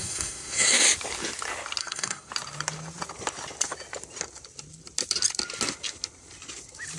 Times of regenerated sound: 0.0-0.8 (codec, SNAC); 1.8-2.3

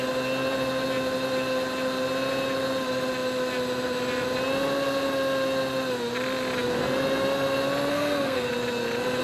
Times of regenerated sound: 7.9-8.5 (codec, SNAC)

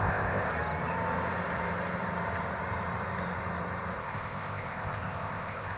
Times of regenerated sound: 0.0-0.5 (codec, ZipCodec); 4.0-5.8